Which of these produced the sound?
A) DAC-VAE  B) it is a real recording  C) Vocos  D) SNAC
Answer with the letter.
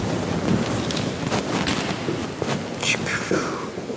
B